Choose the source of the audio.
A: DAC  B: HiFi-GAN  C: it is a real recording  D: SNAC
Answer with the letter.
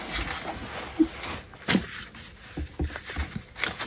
C